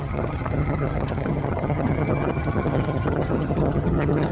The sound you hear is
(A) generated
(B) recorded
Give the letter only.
A